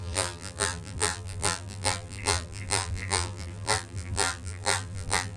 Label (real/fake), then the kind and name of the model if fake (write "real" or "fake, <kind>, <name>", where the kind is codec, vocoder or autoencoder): fake, vocoder, BigVGAN v2